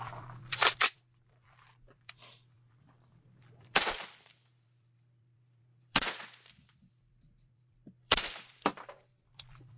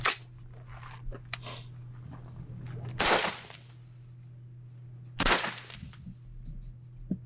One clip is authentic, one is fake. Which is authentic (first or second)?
second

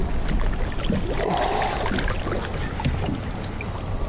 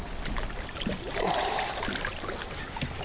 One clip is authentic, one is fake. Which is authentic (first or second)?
first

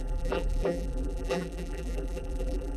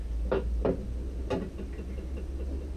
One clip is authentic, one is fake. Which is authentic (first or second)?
second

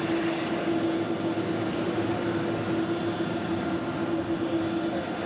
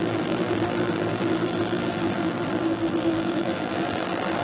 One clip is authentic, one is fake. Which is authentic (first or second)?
first